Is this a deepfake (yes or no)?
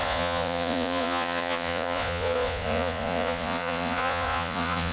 yes